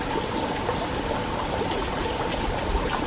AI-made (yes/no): no